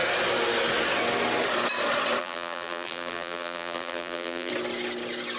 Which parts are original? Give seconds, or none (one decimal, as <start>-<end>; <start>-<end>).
0.0-2.2; 4.5-5.4